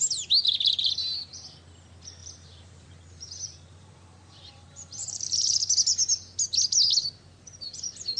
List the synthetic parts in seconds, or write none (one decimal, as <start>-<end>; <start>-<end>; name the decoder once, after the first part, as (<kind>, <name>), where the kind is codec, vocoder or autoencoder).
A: 2.2-5.2 (vocoder, BigVGAN v2)